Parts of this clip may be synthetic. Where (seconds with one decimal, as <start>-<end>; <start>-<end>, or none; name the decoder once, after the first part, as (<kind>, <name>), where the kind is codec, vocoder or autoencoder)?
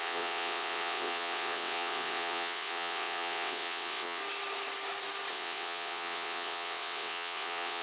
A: 0.0-4.2 (vocoder, WaveNeXt); 5.3-7.8